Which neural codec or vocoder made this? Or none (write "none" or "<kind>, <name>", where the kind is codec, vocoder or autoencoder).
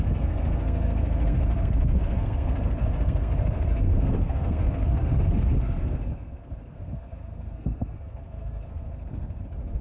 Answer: codec, SNAC